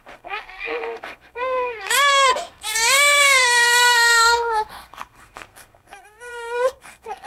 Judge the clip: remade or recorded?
remade